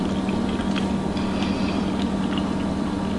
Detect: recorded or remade recorded